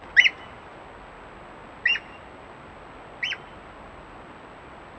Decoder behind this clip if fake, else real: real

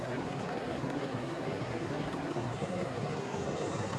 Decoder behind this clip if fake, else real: fake, codec, SNAC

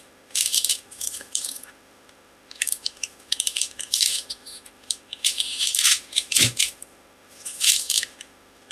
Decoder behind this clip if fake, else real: fake, autoencoder, DAC-VAE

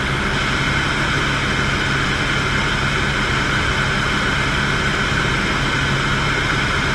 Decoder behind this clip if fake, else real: real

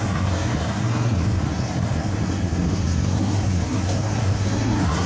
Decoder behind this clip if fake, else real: fake, codec, SNAC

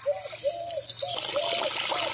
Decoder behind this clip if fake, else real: real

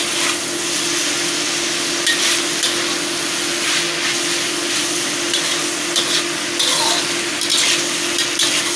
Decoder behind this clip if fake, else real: real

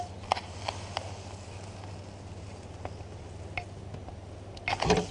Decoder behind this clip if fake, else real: real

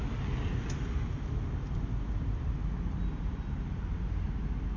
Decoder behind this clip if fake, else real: real